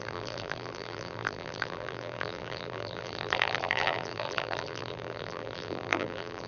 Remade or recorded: remade